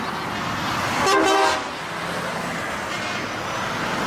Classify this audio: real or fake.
real